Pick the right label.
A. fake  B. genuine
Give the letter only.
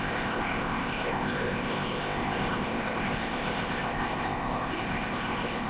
A